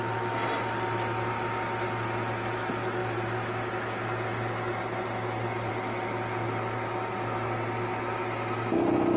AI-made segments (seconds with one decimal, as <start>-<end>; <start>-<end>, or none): none